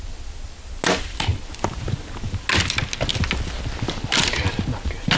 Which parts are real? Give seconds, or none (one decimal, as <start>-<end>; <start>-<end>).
0.0-5.2